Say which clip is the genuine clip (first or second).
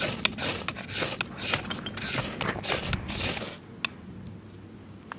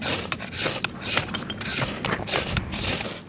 first